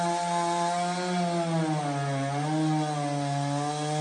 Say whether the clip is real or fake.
real